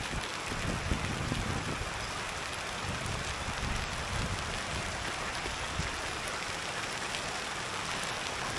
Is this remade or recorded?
recorded